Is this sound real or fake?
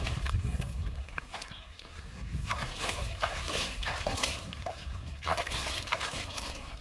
fake